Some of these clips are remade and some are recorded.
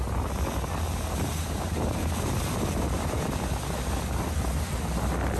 recorded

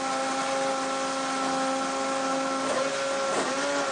recorded